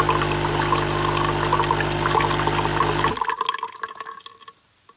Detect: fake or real real